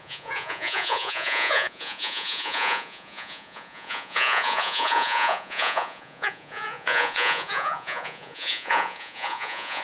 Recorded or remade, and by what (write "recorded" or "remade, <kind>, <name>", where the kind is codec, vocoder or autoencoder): remade, vocoder, Vocos